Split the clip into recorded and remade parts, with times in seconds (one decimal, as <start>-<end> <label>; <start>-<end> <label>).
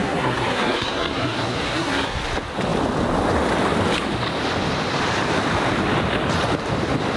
0.0-2.2 remade; 2.2-7.2 recorded